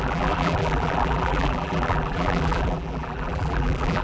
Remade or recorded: remade